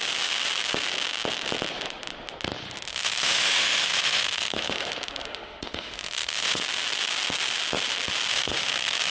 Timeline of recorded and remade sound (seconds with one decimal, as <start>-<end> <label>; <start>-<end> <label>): 0.0-2.9 recorded; 2.9-6.6 remade; 6.6-8.3 recorded; 8.3-9.1 remade